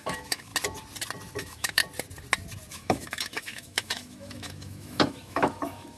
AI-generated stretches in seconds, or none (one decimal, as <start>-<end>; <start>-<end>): 0.0-0.5; 1.4-1.8; 2.7-6.0